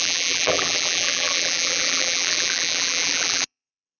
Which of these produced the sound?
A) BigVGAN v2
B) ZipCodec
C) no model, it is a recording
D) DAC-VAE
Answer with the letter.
A